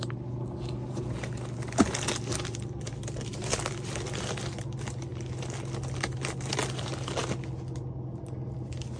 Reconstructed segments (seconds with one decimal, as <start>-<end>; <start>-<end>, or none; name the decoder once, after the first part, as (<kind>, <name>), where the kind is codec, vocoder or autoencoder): none